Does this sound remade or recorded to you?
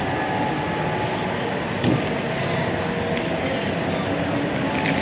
recorded